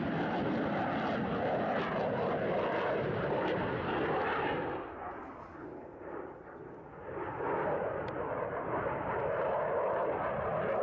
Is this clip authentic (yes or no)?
yes